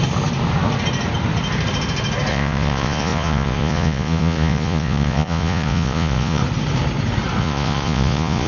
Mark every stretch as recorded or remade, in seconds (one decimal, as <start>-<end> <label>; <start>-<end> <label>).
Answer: 0.0-2.3 recorded; 2.3-6.4 remade; 6.4-7.4 recorded; 7.4-8.5 remade